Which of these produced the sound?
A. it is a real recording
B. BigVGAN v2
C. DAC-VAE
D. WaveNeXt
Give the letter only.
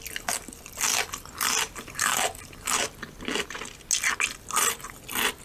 A